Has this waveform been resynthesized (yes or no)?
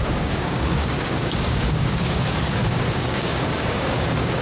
yes